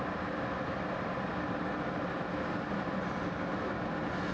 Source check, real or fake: real